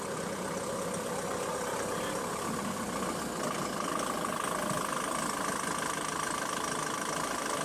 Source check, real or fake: real